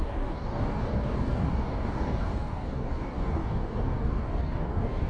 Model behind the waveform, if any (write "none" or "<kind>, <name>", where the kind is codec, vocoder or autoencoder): codec, DAC